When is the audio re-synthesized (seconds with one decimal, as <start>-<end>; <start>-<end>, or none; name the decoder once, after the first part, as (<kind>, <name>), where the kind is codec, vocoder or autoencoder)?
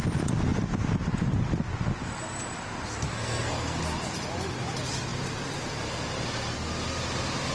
3.1-3.8 (codec, SNAC)